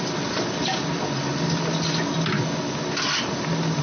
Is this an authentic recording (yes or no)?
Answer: yes